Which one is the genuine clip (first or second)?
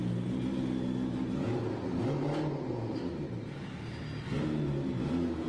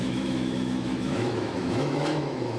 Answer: first